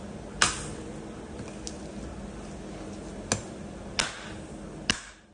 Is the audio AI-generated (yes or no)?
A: no